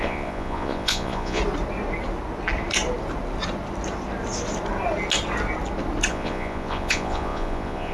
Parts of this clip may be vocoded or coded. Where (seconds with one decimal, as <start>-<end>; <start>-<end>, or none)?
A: 0.0-1.4; 6.1-7.9